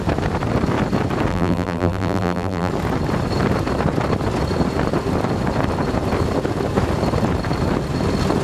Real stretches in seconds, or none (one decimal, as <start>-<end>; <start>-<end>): 0.0-1.3; 2.7-8.4